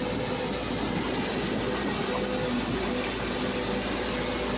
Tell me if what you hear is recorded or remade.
recorded